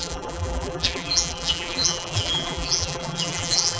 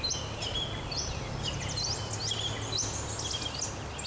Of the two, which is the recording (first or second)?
second